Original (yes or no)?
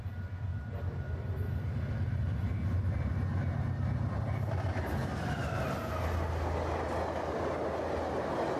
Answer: yes